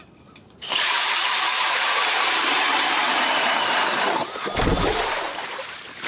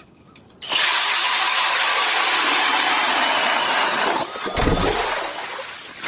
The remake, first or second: first